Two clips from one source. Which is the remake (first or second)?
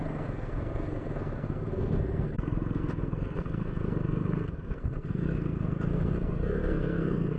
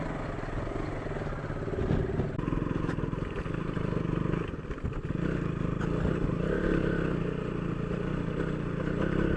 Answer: first